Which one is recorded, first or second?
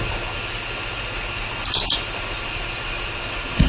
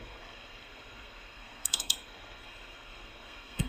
first